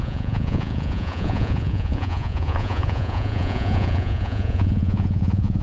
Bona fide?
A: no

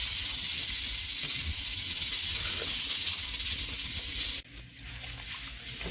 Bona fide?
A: yes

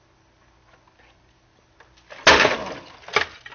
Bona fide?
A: yes